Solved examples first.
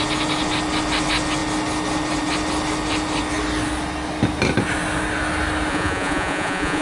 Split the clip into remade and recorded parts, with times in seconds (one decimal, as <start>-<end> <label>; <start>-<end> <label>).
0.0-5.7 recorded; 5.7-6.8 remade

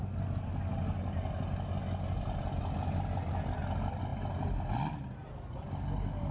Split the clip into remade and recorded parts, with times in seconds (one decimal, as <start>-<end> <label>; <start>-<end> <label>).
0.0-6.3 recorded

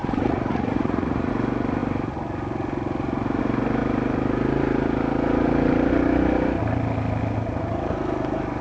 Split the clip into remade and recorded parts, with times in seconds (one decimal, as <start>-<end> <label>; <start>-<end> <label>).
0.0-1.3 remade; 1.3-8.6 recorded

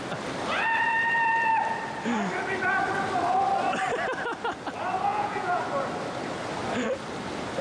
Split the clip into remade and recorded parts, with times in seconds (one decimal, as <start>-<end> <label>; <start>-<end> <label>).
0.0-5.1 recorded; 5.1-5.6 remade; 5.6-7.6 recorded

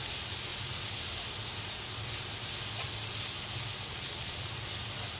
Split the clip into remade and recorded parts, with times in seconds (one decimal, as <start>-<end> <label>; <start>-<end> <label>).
0.0-3.9 recorded; 3.9-4.5 remade; 4.5-5.2 recorded

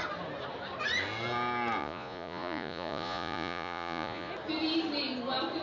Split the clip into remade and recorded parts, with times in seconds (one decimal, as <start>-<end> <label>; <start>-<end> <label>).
0.0-1.8 recorded; 1.8-4.3 remade; 4.3-5.6 recorded